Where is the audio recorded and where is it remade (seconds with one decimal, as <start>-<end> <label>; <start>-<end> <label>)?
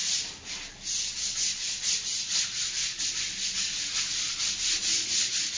0.0-5.6 recorded